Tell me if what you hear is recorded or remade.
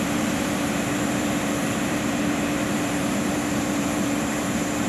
remade